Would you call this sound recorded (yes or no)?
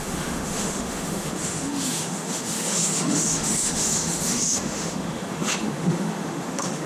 no